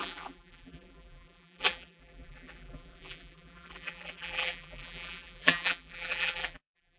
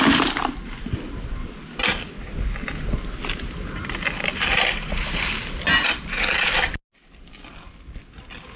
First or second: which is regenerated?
first